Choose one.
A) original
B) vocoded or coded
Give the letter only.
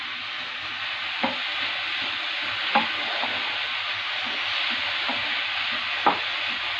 A